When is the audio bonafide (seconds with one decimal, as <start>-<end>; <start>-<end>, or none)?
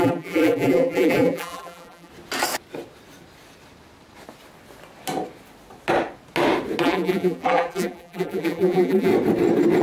2.1-6.8; 9.1-9.8